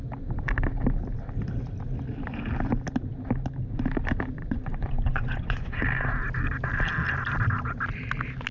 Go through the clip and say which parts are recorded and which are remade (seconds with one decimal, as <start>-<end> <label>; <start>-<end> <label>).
0.0-4.4 recorded; 4.4-5.8 remade; 5.8-8.5 recorded